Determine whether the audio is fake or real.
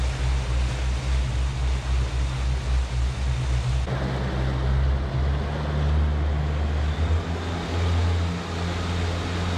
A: real